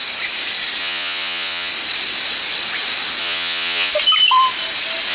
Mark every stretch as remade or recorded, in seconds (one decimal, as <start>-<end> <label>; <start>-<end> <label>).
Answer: 0.0-0.8 recorded; 0.8-1.7 remade; 1.7-3.2 recorded; 3.2-3.9 remade; 3.9-5.1 recorded